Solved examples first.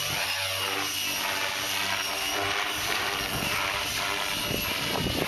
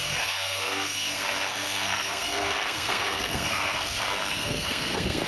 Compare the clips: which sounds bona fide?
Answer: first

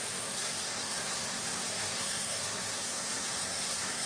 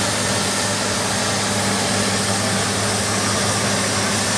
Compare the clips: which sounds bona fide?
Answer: second